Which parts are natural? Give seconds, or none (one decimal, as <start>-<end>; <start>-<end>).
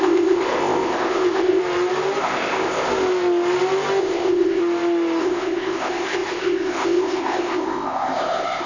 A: 1.6-2.2; 2.9-4.0; 4.6-5.2